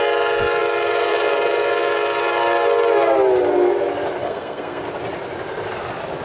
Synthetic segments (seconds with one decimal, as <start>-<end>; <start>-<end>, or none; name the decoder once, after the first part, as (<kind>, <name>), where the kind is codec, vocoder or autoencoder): 4.2-4.8 (codec, SNAC)